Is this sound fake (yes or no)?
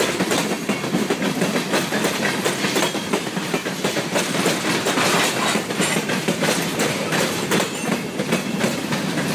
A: yes